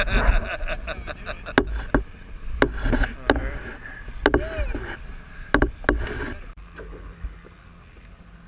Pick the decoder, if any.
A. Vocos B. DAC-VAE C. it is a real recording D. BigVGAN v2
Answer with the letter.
C